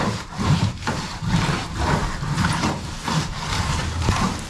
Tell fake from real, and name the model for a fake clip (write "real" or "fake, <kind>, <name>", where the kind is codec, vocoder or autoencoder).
fake, vocoder, BigVGAN v2